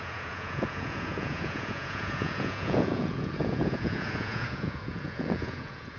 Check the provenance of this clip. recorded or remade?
remade